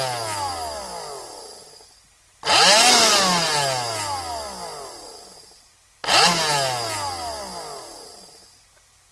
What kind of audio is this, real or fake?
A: real